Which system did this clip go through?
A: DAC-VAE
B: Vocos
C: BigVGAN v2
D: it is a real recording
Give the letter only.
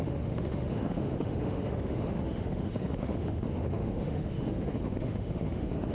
A